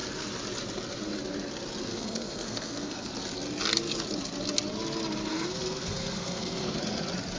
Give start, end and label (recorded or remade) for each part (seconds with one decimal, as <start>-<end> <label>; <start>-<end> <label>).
0.0-1.9 recorded; 1.9-3.1 remade; 3.1-5.3 recorded; 5.3-6.8 remade; 6.8-7.4 recorded